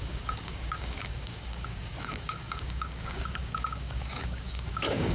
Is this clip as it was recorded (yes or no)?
no